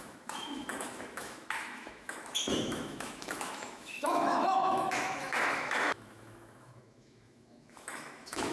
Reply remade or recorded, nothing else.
remade